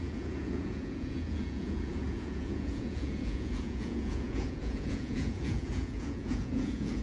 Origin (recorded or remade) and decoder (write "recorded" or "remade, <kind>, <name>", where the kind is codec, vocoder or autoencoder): remade, vocoder, Vocos